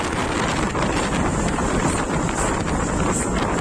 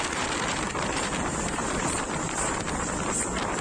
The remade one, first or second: second